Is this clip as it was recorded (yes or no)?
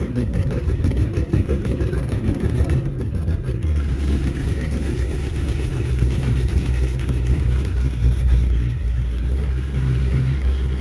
no